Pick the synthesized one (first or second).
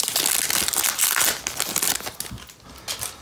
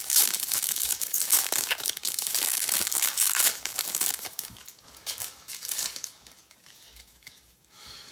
second